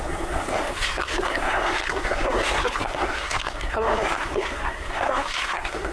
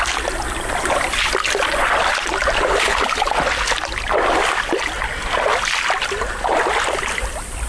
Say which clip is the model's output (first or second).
first